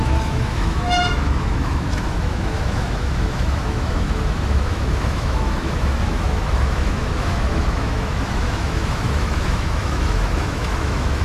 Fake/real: fake